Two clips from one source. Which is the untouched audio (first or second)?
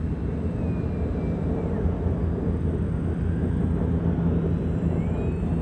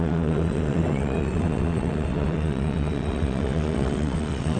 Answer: first